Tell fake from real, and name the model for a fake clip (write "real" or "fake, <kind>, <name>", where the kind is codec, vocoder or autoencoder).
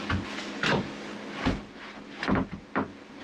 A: real